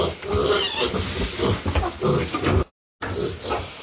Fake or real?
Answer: real